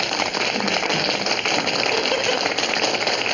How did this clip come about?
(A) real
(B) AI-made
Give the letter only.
A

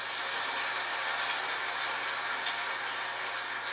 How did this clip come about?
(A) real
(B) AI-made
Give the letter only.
A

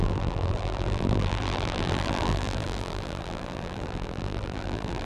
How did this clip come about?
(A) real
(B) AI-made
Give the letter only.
B